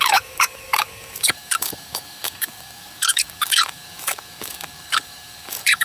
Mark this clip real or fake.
fake